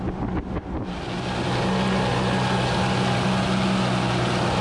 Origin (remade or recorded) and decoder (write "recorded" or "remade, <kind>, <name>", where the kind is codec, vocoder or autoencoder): recorded